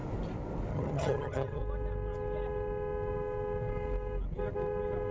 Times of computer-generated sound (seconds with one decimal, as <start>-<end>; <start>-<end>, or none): 0.7-1.6